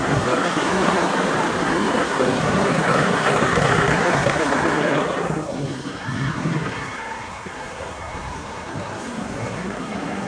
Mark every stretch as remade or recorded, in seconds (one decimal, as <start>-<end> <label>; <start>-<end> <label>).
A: 0.0-1.1 remade; 1.1-1.6 recorded; 1.6-10.3 remade